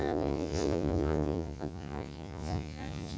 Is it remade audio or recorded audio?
remade